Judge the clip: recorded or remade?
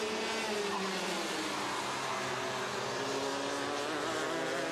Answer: recorded